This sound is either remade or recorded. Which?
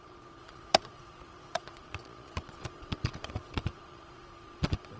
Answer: remade